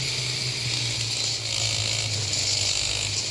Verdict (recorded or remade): recorded